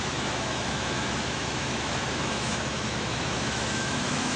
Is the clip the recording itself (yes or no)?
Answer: no